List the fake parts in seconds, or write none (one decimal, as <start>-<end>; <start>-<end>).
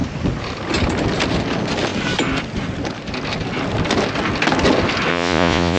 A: 5.1-5.8